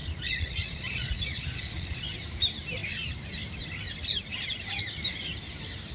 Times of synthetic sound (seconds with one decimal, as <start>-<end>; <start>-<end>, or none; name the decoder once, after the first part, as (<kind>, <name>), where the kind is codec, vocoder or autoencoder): 0.0-2.0 (vocoder, Vocos)

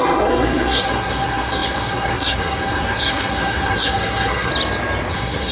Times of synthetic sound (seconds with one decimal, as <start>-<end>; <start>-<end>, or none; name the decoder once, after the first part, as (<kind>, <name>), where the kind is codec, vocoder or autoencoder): 0.0-4.5 (codec, SNAC); 5.1-5.5

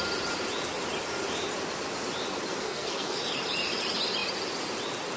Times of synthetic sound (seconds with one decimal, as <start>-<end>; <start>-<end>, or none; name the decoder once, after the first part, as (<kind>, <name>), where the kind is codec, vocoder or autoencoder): 2.5-3.2 (codec, SNAC)

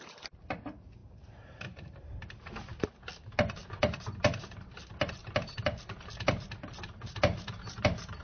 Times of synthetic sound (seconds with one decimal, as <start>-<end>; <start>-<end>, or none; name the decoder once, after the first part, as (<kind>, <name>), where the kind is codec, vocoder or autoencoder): 0.0-2.7 (vocoder, BigVGAN v2); 3.8-5.2; 6.3-8.2

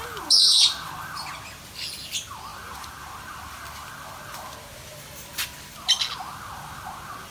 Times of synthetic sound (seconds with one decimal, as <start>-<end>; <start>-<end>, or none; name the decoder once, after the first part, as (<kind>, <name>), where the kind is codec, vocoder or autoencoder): none

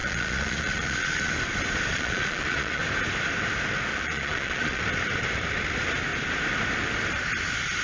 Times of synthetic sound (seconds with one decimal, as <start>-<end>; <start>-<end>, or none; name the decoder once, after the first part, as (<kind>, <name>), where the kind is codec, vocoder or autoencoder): 0.0-1.3 (vocoder, Vocos); 1.9-2.8; 3.9-4.8

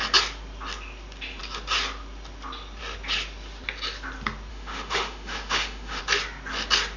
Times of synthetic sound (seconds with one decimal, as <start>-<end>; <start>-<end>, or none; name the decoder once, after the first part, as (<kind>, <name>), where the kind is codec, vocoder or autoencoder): 4.5-6.0 (autoencoder, DAC-VAE)

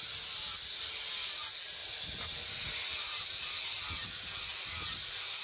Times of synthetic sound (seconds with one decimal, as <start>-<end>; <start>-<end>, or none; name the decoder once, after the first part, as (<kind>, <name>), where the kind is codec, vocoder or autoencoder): none